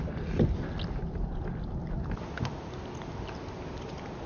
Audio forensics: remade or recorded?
recorded